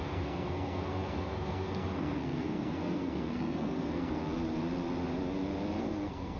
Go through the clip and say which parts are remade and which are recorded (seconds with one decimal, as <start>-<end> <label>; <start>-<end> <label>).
0.0-4.2 remade; 4.2-5.8 recorded; 5.8-6.4 remade